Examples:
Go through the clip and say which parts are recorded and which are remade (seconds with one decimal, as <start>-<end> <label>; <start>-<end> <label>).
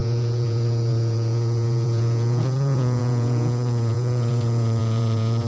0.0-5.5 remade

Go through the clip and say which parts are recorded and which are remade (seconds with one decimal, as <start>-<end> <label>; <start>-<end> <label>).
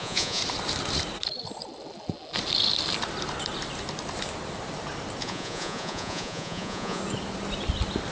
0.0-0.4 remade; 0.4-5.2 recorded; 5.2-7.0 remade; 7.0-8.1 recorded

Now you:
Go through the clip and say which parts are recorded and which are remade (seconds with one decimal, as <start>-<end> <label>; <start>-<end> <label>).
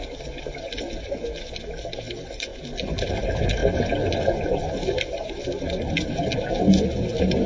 0.0-7.5 recorded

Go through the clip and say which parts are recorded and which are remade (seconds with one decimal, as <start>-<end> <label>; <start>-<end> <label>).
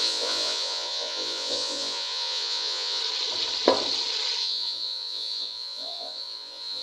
0.0-3.0 remade; 3.0-4.4 recorded; 4.4-6.8 remade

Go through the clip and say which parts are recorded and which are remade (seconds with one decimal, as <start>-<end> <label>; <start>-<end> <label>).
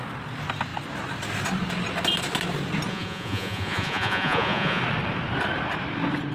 0.0-2.9 recorded; 2.9-4.8 remade; 4.8-6.3 recorded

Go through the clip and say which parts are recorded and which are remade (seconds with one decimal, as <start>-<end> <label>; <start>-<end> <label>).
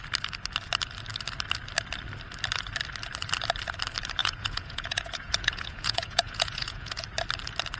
0.0-4.2 recorded; 4.2-7.0 remade; 7.0-7.8 recorded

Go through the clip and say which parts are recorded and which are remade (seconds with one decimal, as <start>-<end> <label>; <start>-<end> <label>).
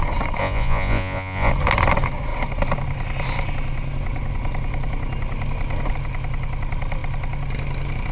0.0-0.4 recorded; 0.4-1.5 remade; 1.5-8.1 recorded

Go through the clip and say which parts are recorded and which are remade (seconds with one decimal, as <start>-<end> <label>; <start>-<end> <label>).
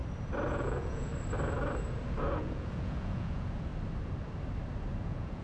0.0-0.5 recorded; 0.5-1.1 remade; 1.1-2.4 recorded; 2.4-3.7 remade; 3.7-5.0 recorded; 5.0-5.4 remade